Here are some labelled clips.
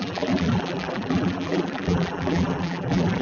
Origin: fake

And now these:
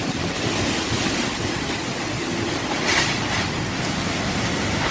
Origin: real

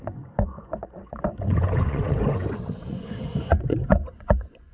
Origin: fake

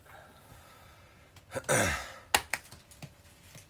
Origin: real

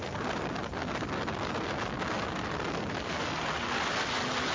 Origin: real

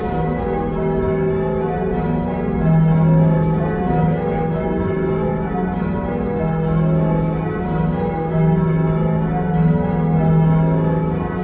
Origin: real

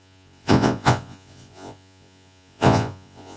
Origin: fake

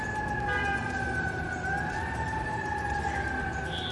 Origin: real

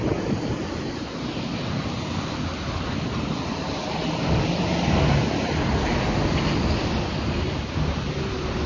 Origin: real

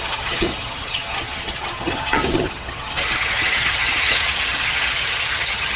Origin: fake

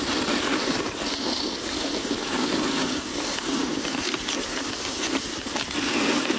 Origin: real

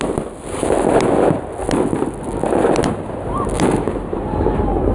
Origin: real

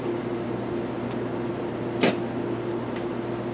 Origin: real